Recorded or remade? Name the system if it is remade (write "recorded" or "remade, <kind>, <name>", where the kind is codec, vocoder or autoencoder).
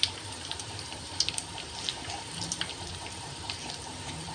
remade, vocoder, BigVGAN v2